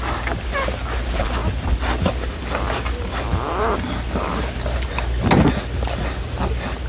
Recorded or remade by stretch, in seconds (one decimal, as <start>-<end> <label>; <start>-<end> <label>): 0.0-6.9 recorded